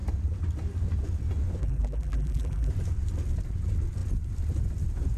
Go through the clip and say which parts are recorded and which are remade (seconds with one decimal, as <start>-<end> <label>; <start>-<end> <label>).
0.0-1.6 recorded; 1.6-2.7 remade; 2.7-5.2 recorded